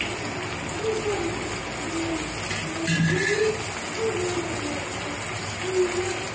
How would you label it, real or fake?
real